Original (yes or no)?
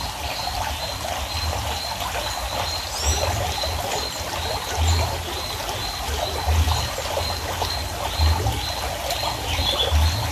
yes